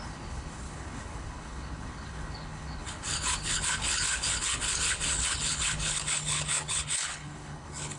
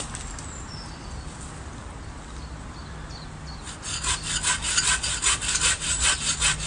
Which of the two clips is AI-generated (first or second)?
first